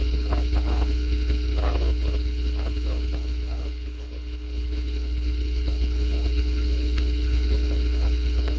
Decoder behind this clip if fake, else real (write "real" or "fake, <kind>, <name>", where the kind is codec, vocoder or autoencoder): fake, codec, HILCodec